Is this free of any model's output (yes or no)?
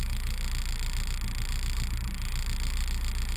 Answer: yes